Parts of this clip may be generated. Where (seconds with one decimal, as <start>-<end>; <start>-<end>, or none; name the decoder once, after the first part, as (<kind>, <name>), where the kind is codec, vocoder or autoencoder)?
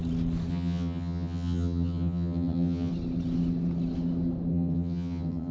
0.5-2.9 (vocoder, HiFi-GAN); 4.5-5.5